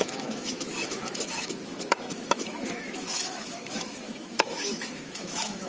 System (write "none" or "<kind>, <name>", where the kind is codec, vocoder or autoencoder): autoencoder, DAC-VAE